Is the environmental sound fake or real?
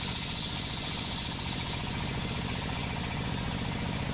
fake